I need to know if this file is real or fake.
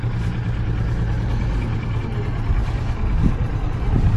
real